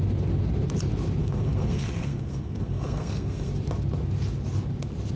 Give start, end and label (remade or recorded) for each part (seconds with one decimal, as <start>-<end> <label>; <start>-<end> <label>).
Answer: 0.0-1.2 recorded; 1.2-3.5 remade; 3.5-5.2 recorded